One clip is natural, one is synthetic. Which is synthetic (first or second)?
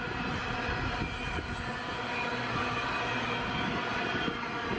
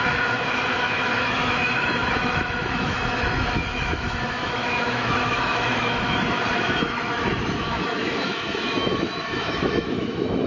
second